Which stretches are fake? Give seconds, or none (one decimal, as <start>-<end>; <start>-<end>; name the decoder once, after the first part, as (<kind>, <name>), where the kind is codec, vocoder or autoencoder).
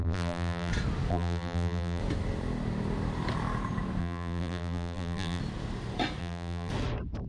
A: 0.0-0.7 (vocoder, BigVGAN v2); 1.1-2.0; 4.0-5.4; 6.2-6.7